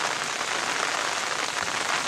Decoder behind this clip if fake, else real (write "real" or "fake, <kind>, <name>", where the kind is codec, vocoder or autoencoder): real